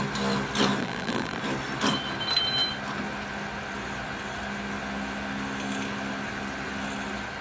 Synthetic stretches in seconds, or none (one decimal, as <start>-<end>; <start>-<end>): 0.8-1.4